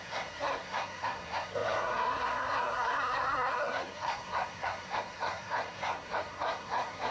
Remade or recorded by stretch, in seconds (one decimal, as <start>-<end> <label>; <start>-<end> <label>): 0.0-7.1 remade